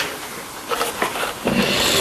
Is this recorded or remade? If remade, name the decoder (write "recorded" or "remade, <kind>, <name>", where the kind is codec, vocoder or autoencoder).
recorded